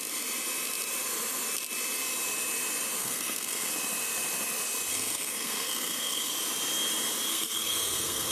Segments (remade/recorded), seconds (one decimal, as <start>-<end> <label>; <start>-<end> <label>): 0.0-3.0 recorded; 3.0-3.7 remade; 3.7-4.9 recorded; 4.9-6.3 remade; 6.3-7.3 recorded; 7.3-8.3 remade